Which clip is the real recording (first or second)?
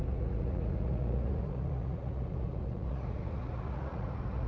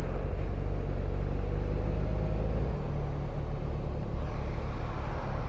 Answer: second